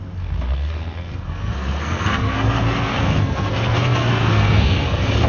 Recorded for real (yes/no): no